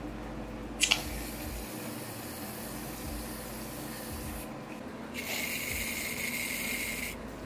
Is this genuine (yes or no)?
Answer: yes